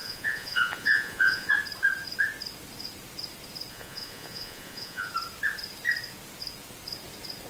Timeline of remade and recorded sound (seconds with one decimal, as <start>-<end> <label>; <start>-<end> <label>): 0.0-1.5 remade; 1.5-3.7 recorded; 3.7-5.1 remade; 5.1-7.5 recorded